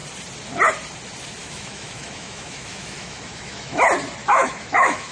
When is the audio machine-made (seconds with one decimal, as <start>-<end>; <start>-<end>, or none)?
1.4-3.8; 4.2-5.1